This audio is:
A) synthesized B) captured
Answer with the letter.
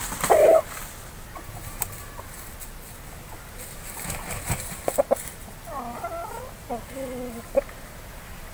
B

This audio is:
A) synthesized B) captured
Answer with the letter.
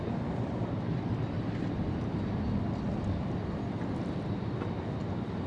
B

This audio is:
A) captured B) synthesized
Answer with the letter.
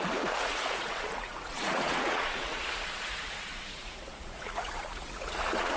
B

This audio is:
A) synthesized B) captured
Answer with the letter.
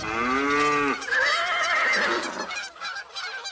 B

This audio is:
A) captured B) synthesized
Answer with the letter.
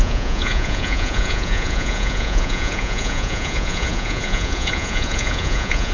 B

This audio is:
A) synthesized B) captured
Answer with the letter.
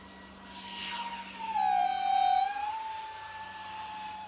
B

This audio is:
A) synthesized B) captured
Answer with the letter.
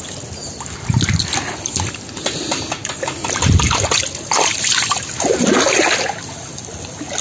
B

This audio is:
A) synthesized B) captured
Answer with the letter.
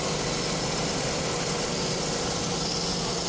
B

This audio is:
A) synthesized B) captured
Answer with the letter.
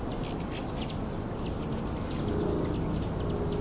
B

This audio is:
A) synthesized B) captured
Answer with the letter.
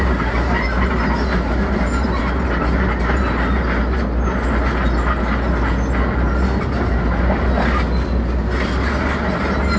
B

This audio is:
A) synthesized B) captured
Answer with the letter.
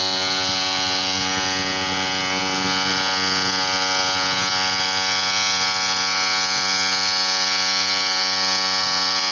A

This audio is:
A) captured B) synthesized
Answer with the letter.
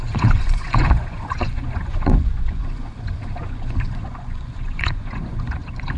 B